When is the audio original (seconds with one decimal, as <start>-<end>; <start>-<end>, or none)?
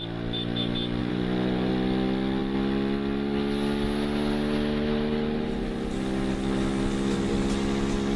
0.0-1.0; 1.7-8.2